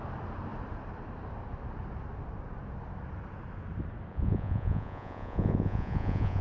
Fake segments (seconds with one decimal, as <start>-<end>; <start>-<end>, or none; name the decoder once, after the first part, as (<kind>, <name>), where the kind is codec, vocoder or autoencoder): 4.1-6.4 (vocoder, Vocos)